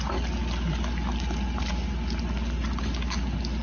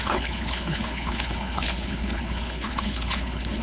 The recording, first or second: first